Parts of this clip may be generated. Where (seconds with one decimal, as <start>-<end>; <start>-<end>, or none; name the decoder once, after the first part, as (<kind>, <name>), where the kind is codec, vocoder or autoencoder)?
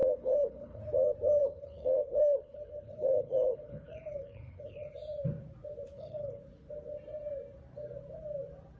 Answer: 0.0-0.8 (codec, HILCodec); 1.4-4.9; 5.9-6.4